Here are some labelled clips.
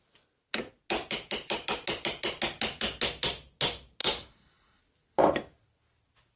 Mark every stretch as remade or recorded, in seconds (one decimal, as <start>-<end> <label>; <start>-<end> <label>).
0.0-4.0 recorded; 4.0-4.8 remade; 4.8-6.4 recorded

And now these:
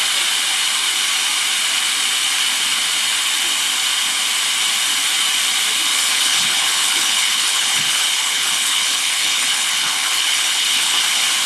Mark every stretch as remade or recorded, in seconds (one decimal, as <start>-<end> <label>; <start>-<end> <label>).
0.0-5.9 recorded; 5.9-11.0 remade; 11.0-11.5 recorded

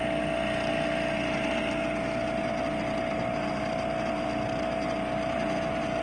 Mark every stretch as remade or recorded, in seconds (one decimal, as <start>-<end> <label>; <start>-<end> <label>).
0.0-6.0 recorded

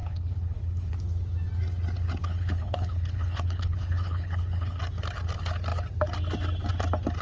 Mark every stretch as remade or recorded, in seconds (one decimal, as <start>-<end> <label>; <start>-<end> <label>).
0.0-0.9 remade; 0.9-2.2 recorded; 2.2-4.8 remade; 4.8-7.2 recorded

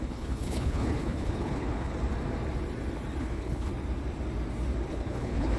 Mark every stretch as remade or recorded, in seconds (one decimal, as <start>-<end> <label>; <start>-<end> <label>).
0.0-1.9 remade; 1.9-3.2 recorded; 3.2-3.7 remade; 3.7-4.9 recorded; 4.9-5.6 remade

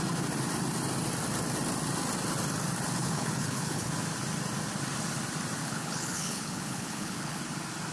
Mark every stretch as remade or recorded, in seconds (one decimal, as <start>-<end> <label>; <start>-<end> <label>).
0.0-3.0 recorded; 3.0-3.9 remade; 3.9-5.6 recorded; 5.6-7.4 remade; 7.4-7.9 recorded

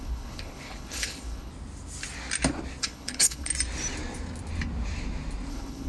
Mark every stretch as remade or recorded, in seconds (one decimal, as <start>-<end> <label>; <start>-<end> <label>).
0.0-1.5 remade; 1.5-2.8 recorded; 2.8-3.5 remade; 3.5-5.5 recorded; 5.5-5.9 remade

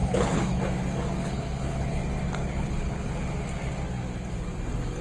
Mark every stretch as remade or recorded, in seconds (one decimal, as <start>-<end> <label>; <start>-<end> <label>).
0.0-0.6 remade; 0.6-1.2 recorded; 1.2-2.0 remade; 2.0-2.4 recorded; 2.4-3.1 remade; 3.1-5.0 recorded